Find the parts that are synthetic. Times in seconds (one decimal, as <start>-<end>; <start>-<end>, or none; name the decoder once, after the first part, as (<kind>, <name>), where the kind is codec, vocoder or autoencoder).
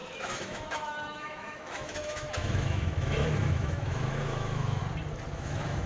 0.0-4.8 (autoencoder, DAC-VAE); 5.3-5.9